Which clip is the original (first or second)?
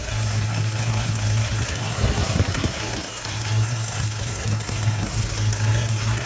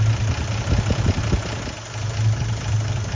second